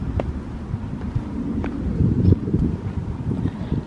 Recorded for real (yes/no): yes